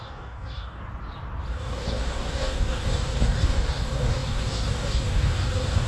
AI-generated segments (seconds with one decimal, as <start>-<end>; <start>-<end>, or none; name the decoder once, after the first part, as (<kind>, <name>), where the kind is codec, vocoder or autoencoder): 0.0-0.8 (codec, DAC); 1.5-5.9